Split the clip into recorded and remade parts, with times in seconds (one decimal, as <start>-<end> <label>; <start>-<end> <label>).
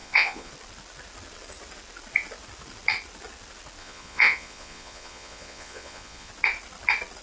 0.0-0.5 remade; 0.5-3.8 recorded; 3.8-6.3 remade; 6.3-7.2 recorded